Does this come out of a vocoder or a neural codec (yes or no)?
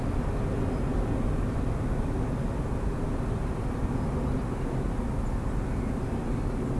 no